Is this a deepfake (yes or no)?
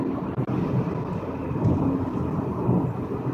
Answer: no